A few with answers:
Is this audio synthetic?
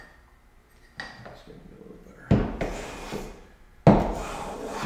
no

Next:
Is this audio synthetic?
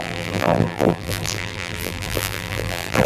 yes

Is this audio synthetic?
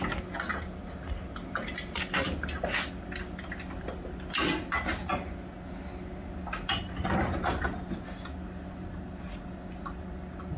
no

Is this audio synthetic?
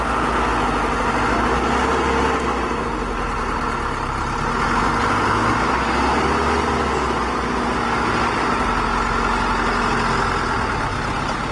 no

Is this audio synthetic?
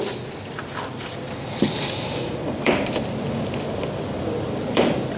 yes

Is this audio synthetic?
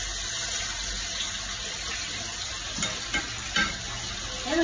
no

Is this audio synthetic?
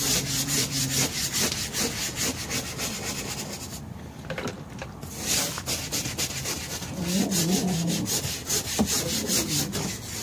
no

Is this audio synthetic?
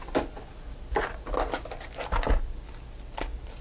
no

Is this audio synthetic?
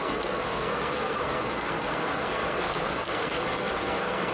yes